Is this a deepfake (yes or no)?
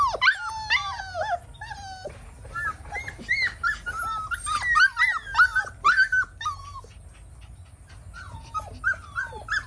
no